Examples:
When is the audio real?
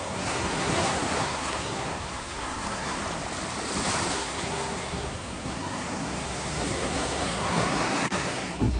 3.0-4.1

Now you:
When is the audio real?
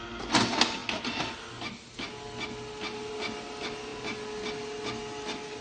0.0-5.6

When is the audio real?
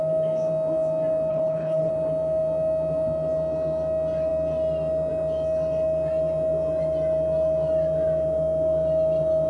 0.0-1.3; 1.9-9.5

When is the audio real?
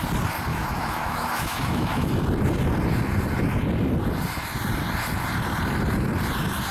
0.0-0.5; 2.1-6.7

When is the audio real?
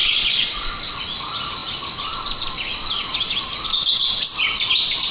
0.7-5.1